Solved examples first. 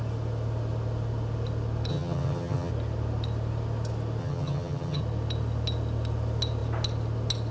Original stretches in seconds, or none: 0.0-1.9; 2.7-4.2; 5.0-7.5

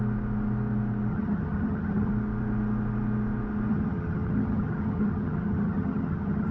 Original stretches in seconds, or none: 0.0-1.1; 2.1-3.7